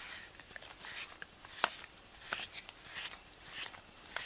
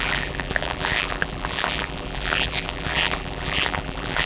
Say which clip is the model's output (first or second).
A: second